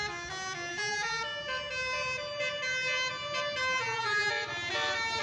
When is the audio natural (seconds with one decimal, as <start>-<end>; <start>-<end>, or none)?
0.0-0.7; 1.2-3.6; 4.3-5.2